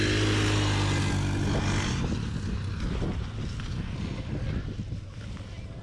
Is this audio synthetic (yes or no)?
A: no